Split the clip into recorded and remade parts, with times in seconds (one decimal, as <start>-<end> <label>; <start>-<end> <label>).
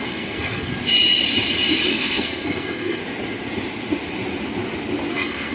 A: 0.0-0.7 remade; 0.7-1.9 recorded; 1.9-3.0 remade; 3.0-5.1 recorded; 5.1-5.5 remade